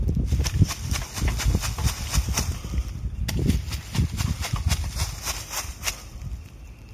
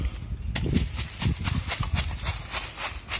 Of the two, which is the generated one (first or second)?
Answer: first